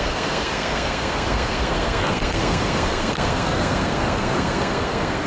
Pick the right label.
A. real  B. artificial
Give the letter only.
B